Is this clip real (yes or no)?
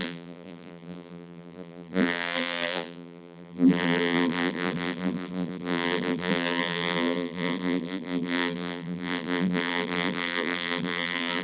no